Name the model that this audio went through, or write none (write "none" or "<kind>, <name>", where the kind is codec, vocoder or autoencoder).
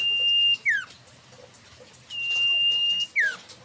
none